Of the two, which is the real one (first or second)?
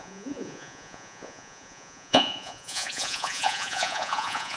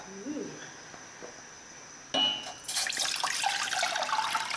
second